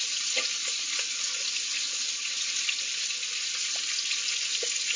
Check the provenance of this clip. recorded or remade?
recorded